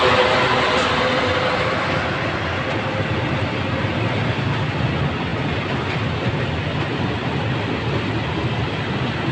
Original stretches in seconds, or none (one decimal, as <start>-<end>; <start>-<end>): 0.0-9.3

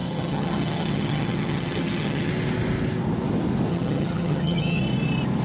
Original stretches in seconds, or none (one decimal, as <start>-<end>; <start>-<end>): 2.3-3.7; 4.8-5.4

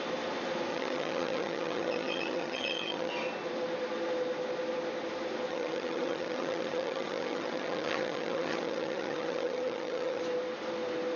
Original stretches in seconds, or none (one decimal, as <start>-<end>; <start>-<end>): 0.0-0.7; 3.1-5.5; 10.2-11.2

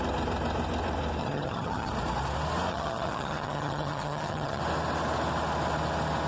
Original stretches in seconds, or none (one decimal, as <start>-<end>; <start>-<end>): 0.0-1.2; 1.9-2.7; 4.6-6.3

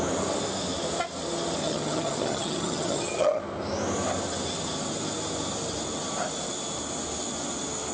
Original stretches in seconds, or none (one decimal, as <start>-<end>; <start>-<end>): 0.0-1.6; 3.4-7.9

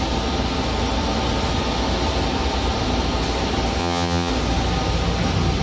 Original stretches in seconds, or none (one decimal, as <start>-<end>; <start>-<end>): 0.0-3.8; 4.3-5.6

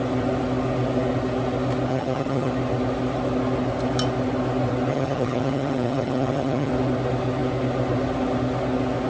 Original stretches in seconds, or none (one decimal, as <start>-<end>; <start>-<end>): 0.0-1.9; 2.5-4.9; 6.7-9.1

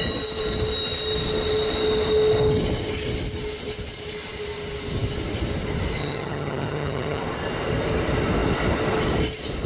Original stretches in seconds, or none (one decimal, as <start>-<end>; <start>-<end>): 0.0-6.0; 7.2-9.7